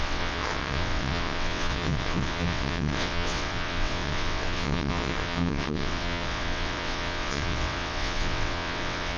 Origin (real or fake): fake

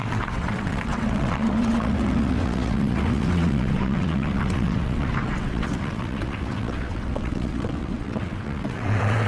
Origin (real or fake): fake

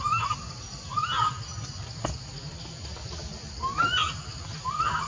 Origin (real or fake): real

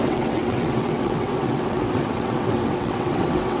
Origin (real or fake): fake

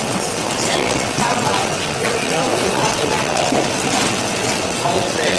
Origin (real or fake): fake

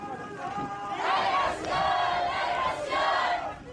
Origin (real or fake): real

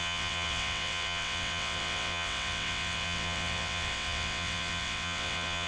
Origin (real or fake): fake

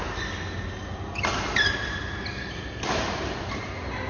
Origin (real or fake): real